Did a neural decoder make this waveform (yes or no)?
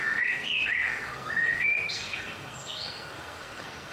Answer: yes